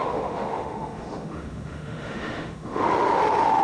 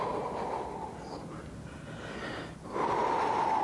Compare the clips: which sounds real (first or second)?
second